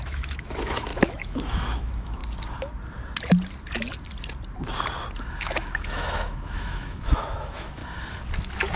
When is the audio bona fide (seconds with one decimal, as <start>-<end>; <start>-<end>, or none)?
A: 2.2-5.4; 7.8-8.8